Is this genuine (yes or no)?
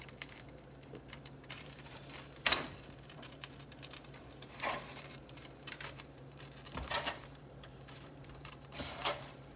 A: no